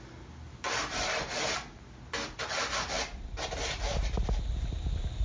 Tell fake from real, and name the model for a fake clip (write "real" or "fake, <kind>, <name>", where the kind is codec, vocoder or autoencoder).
real